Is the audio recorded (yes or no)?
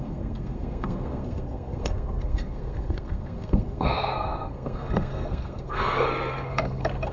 no